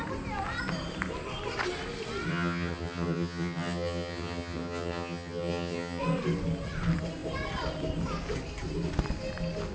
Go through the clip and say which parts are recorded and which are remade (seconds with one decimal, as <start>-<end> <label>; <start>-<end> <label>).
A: 0.0-2.3 recorded; 2.3-6.0 remade; 6.0-9.7 recorded